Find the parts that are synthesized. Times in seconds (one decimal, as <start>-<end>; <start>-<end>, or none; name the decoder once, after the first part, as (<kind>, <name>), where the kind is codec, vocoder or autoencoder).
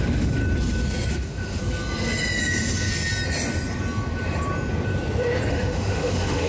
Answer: 0.0-0.4 (autoencoder, DAC-VAE); 1.1-1.6; 5.5-6.5